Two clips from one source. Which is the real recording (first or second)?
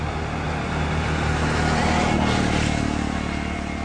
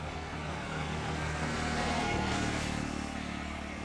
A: first